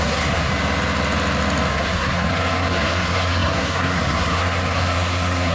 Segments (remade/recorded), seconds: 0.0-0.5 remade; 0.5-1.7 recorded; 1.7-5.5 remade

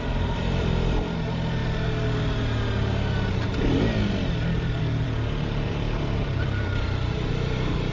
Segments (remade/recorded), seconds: 0.0-1.6 remade; 1.6-4.8 recorded; 4.8-7.9 remade